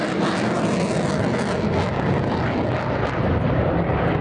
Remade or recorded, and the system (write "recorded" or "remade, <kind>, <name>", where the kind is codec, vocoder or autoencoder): recorded